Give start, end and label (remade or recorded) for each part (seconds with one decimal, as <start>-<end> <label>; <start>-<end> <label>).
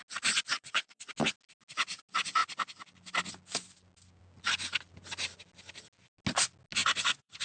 0.0-0.5 recorded; 0.5-1.1 remade; 1.1-6.8 recorded; 6.8-7.4 remade